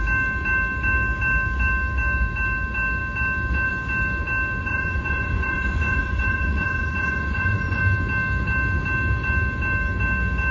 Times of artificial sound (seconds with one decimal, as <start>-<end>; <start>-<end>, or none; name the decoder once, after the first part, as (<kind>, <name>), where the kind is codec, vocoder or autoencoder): 4.6-7.8 (vocoder, Vocos)